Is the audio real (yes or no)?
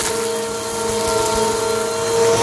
yes